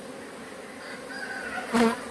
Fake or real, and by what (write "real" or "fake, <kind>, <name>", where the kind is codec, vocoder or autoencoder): real